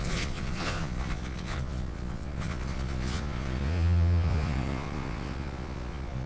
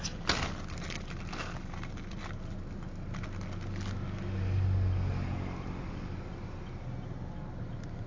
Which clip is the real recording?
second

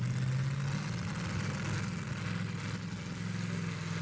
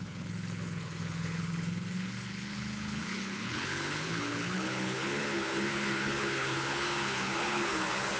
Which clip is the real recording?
first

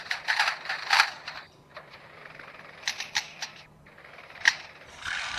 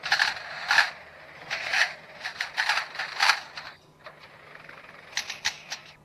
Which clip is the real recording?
second